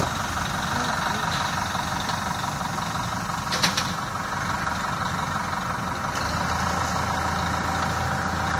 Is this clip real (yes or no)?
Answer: yes